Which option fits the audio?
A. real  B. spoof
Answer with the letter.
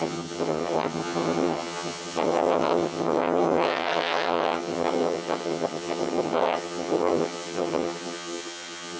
B